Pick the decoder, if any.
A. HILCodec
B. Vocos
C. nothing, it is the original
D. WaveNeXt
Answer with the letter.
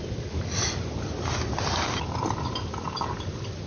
C